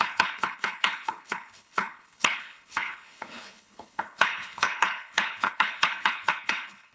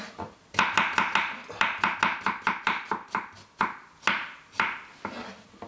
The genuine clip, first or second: second